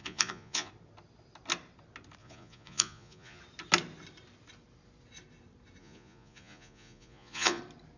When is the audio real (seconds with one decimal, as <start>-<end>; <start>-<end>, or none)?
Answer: 0.7-2.2; 3.4-5.8; 7.6-8.0